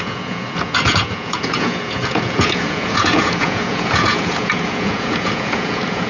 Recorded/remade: remade